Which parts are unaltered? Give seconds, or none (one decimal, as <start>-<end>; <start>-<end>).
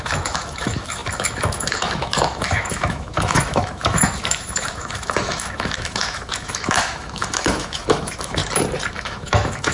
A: 8.4-8.9